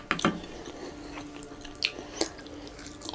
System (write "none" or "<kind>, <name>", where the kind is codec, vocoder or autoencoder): none